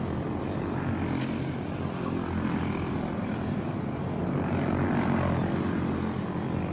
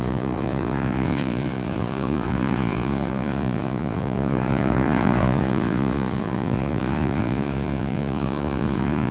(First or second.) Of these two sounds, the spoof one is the second